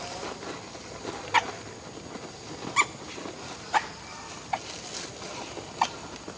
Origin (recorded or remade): recorded